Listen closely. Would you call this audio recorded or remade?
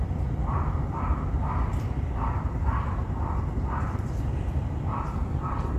remade